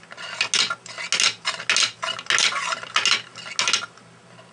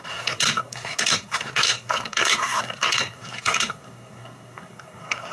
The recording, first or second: first